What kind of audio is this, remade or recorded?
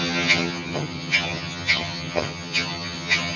remade